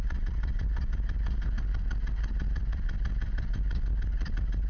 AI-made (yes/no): no